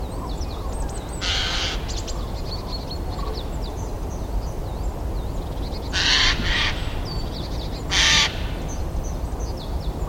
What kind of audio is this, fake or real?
real